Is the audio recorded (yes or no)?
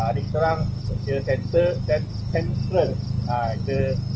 yes